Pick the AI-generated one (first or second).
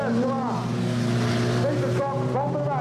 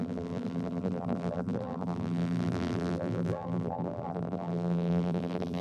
second